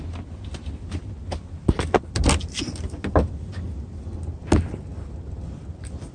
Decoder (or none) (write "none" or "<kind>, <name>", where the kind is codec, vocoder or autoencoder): none